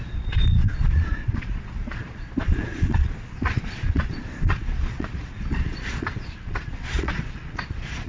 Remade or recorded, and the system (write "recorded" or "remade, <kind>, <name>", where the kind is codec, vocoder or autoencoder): remade, vocoder, Vocos